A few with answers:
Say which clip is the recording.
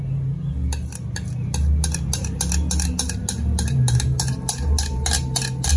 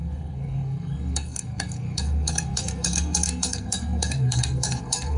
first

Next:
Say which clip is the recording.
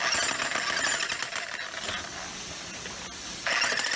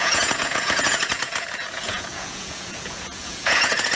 first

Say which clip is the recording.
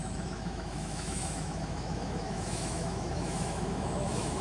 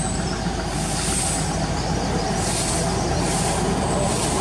second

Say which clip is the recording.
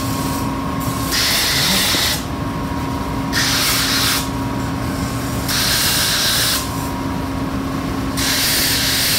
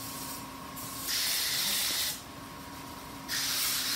first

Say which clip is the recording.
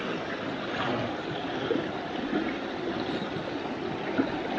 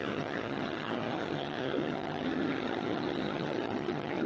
first